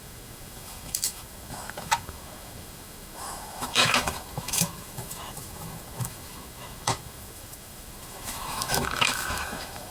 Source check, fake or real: fake